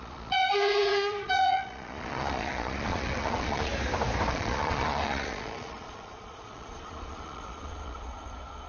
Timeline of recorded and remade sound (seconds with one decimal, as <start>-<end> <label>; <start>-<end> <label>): 0.0-3.7 remade; 3.7-4.3 recorded; 4.3-8.7 remade